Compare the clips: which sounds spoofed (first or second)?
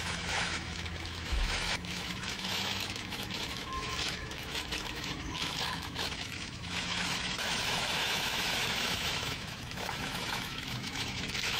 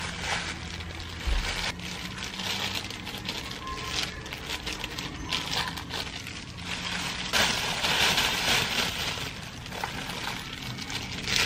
first